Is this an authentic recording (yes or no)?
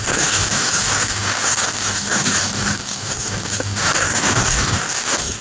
no